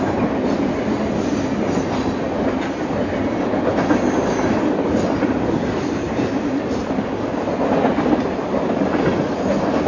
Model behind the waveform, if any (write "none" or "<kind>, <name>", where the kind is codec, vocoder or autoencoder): vocoder, BigVGAN v2